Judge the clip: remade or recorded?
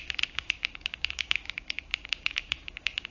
remade